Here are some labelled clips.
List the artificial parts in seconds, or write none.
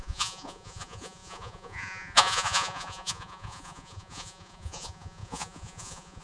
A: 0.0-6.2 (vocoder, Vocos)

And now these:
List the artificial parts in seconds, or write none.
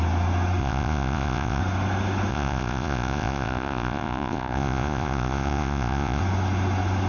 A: 0.6-1.6 (vocoder, Vocos); 2.3-6.2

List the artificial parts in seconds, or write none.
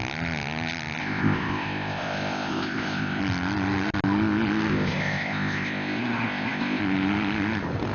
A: 1.0-3.2 (codec, ZipCodec); 4.7-6.8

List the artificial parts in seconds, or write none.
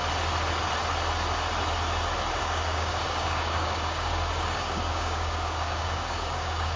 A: 2.4-6.8 (codec, DAC)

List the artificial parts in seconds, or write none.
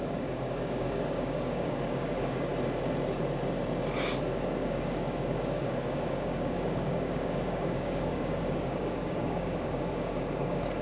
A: 0.0-2.5 (codec, DAC); 4.2-10.8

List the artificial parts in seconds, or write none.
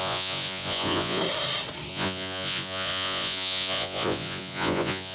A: 0.0-1.2 (vocoder, Vocos); 1.9-5.1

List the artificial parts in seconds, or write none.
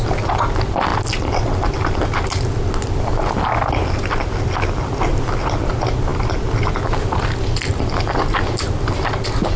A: none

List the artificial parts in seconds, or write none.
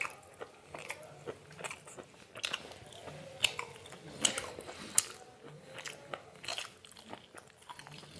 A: none